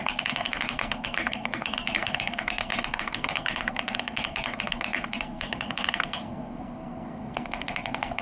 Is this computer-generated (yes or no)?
yes